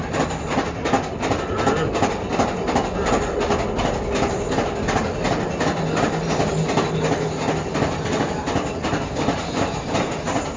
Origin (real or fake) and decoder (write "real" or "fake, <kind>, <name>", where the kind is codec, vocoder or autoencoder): real